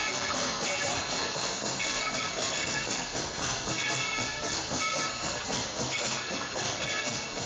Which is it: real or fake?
fake